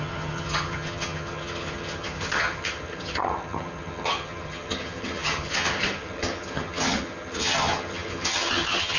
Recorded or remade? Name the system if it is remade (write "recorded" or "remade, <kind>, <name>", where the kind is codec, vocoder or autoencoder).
remade, vocoder, HiFi-GAN